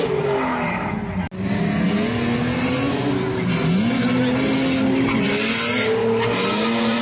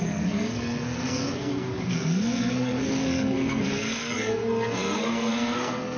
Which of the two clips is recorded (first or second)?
first